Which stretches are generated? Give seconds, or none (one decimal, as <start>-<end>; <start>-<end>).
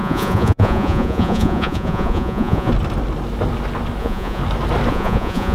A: 0.0-2.7; 4.0-4.4; 4.9-5.5